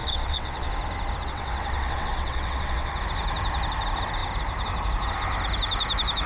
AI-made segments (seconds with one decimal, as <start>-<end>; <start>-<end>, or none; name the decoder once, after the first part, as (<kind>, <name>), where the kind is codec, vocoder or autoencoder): 0.0-0.7 (vocoder, WaveNeXt); 1.2-3.0